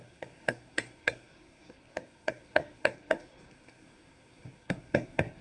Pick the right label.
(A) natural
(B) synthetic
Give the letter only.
B